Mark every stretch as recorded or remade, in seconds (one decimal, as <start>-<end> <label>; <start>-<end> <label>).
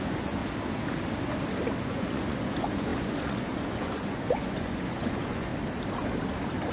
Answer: 0.0-0.4 remade; 0.4-1.8 recorded; 1.8-5.5 remade; 5.5-6.7 recorded